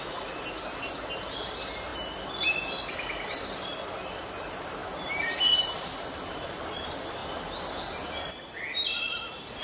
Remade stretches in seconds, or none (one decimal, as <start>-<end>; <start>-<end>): none